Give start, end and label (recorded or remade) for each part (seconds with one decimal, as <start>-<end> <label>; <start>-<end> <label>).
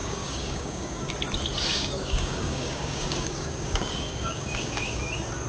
0.0-1.1 remade; 1.1-1.7 recorded; 1.7-5.0 remade; 5.0-5.5 recorded